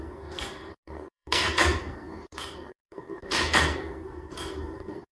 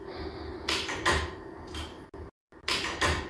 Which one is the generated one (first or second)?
first